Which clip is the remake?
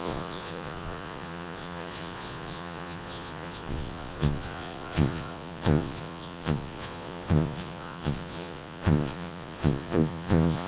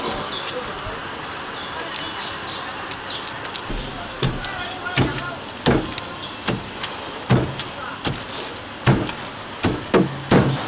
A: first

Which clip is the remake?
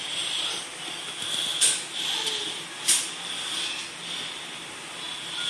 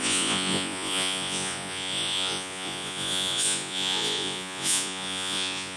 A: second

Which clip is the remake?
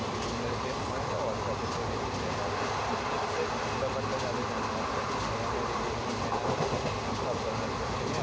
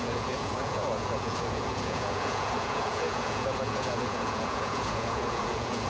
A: second